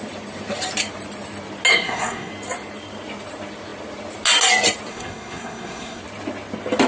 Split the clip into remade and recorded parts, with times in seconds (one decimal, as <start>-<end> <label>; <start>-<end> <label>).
0.0-1.7 recorded; 1.7-2.3 remade; 2.3-4.9 recorded; 4.9-6.0 remade; 6.0-6.9 recorded